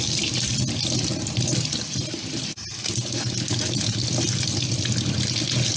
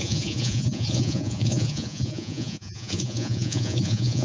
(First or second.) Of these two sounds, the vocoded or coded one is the second